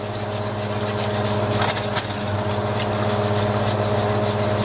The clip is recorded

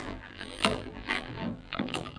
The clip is remade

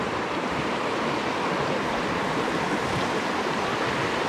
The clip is recorded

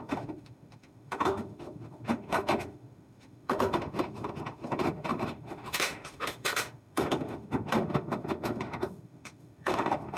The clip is remade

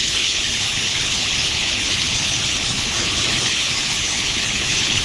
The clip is remade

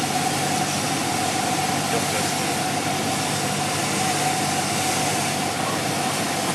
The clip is recorded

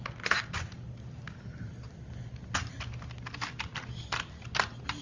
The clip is recorded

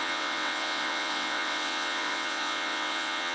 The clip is remade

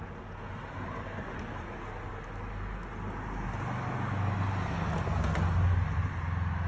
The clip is recorded